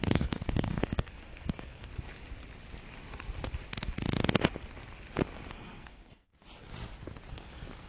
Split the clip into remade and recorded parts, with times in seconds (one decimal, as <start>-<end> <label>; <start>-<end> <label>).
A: 0.0-1.9 remade; 1.9-5.5 recorded; 5.5-6.3 remade; 6.3-7.3 recorded; 7.3-7.9 remade